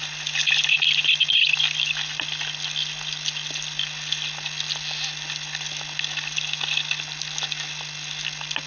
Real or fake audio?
real